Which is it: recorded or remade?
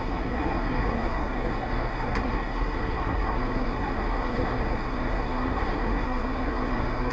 remade